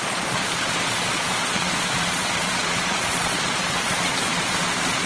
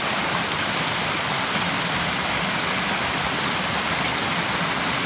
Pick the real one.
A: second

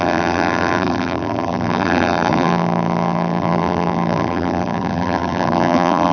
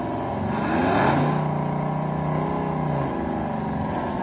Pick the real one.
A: second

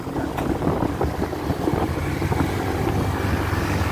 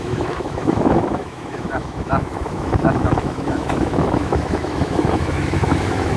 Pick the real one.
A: first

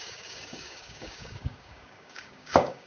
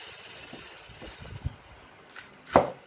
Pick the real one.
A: second